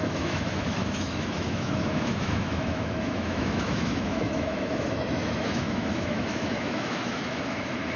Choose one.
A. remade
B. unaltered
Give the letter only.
A